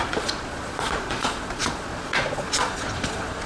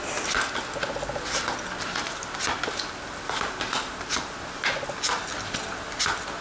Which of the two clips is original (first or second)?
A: second